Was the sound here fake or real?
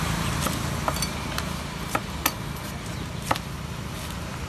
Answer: real